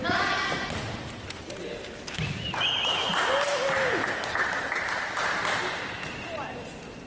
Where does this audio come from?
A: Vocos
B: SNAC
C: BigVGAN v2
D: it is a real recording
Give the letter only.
D